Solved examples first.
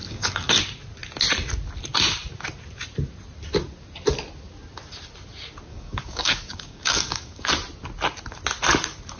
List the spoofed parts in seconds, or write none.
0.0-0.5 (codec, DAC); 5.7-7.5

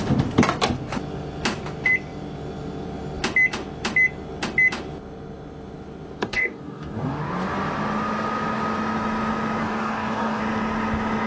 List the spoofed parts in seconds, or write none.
6.2-7.2 (codec, DAC); 9.6-10.4

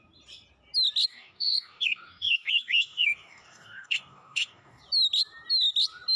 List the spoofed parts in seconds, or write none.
1.1-4.8 (codec, DAC)